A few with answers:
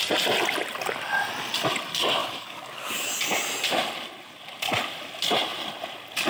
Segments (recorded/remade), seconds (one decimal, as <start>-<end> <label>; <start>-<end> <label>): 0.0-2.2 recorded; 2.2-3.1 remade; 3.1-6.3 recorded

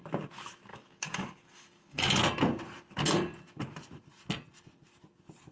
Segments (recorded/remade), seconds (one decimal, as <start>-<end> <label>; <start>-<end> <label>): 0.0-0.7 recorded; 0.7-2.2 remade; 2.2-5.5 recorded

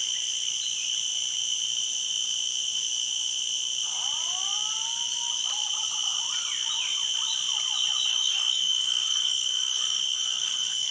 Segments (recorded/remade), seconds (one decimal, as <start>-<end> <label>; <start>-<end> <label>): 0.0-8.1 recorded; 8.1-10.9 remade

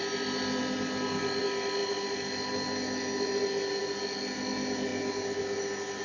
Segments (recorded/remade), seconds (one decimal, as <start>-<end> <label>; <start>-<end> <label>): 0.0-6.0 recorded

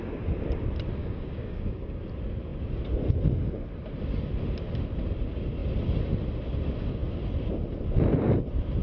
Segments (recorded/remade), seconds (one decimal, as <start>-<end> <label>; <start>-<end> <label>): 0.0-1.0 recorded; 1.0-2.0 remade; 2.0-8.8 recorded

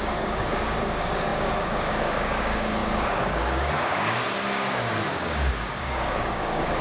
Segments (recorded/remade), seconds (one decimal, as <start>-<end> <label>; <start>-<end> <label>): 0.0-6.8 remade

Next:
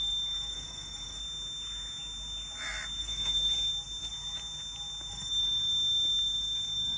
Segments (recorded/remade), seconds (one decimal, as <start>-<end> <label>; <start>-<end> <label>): 0.0-1.2 remade; 1.2-3.0 recorded; 3.0-3.7 remade; 3.7-5.1 recorded; 5.1-5.7 remade; 5.7-6.2 recorded; 6.2-7.0 remade